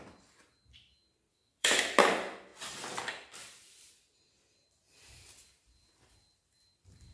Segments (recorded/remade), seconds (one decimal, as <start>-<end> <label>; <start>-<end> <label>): 0.0-1.3 recorded; 1.3-1.8 remade; 1.8-7.1 recorded